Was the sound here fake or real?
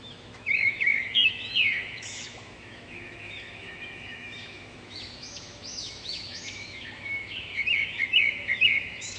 fake